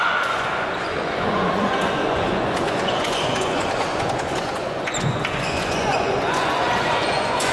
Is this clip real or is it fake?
fake